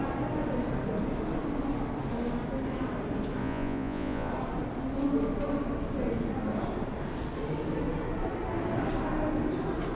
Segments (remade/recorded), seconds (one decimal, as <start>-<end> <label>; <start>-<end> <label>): 0.0-3.4 recorded; 3.4-4.3 remade; 4.3-9.9 recorded